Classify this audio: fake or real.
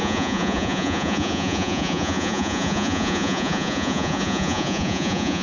fake